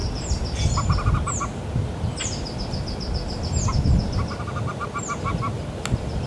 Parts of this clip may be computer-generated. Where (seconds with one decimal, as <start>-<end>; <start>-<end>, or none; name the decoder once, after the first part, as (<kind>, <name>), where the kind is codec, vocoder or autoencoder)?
none